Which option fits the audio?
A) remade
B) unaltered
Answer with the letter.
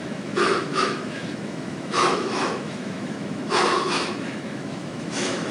A